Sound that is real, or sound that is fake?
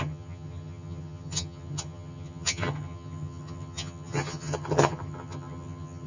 fake